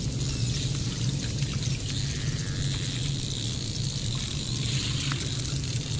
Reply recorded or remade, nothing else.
recorded